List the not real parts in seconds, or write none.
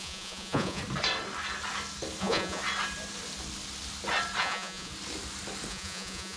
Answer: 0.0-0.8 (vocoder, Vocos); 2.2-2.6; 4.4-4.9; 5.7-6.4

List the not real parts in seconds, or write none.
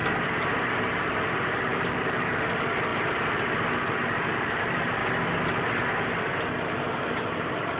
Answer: 0.8-5.0 (vocoder, BigVGAN v2); 7.1-7.8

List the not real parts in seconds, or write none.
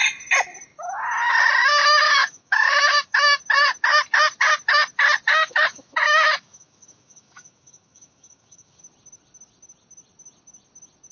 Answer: 1.6-3.4 (autoencoder, DAC-VAE); 5.4-8.8